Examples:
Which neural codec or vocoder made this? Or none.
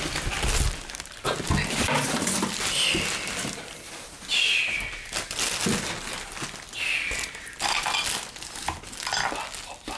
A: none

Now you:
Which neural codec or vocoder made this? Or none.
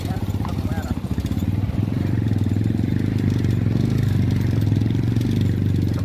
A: none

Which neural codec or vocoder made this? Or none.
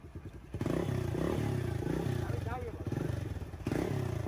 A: none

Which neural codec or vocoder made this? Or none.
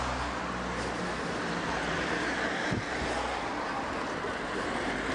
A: none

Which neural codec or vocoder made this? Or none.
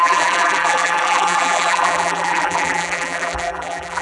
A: vocoder, BigVGAN v2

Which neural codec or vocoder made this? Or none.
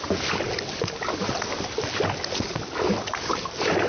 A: none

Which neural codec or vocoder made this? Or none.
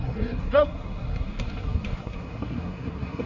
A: codec, SNAC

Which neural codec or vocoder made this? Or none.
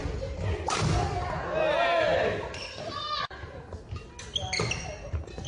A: none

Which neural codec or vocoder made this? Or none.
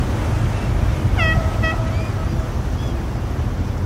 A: none